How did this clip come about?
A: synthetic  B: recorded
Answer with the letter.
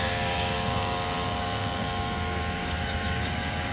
A